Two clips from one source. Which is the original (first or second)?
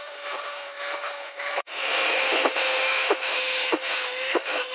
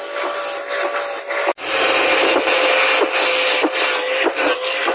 second